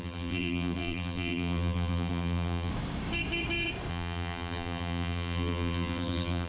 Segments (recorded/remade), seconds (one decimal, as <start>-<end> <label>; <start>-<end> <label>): 0.0-2.7 remade; 2.7-3.9 recorded; 3.9-6.5 remade